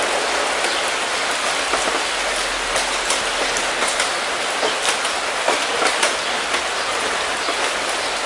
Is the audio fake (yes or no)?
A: no